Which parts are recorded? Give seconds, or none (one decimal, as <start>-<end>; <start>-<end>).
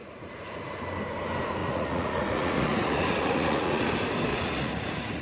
0.8-1.6; 3.9-4.3